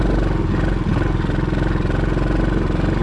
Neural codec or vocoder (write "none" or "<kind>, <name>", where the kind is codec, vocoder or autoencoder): none